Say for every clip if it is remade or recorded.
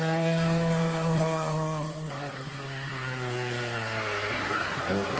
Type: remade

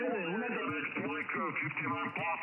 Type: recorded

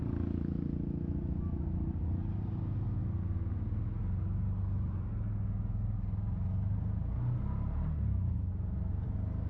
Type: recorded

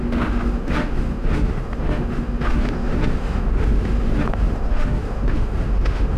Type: remade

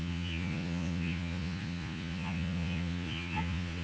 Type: remade